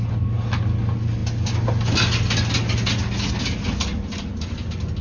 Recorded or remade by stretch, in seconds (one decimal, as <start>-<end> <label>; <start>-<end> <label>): 0.0-5.0 recorded

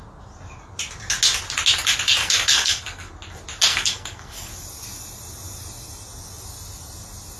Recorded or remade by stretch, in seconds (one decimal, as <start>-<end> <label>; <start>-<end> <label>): 0.0-2.2 recorded; 2.2-3.1 remade; 3.1-3.7 recorded; 3.7-4.5 remade; 4.5-7.4 recorded

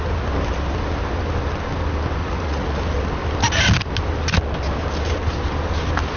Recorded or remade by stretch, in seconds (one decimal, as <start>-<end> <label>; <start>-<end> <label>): 0.0-2.2 recorded; 2.2-2.8 remade; 2.8-6.2 recorded

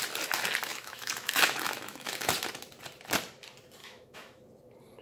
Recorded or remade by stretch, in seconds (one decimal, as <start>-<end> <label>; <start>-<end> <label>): 0.0-0.7 recorded; 0.7-2.3 remade; 2.3-3.8 recorded; 3.8-4.4 remade; 4.4-5.0 recorded

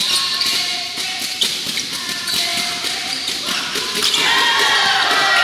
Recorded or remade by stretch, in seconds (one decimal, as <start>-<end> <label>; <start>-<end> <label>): 0.0-2.5 recorded; 2.5-3.4 remade; 3.4-5.4 recorded

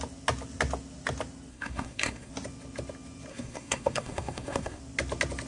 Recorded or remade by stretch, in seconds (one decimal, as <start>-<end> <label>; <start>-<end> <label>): 0.0-1.5 recorded; 1.5-2.3 remade; 2.3-3.3 recorded; 3.3-4.8 remade; 4.8-5.5 recorded